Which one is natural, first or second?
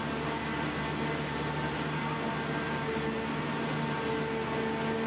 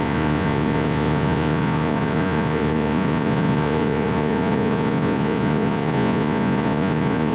first